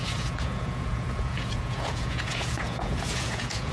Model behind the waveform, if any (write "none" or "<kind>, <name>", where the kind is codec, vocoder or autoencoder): vocoder, Vocos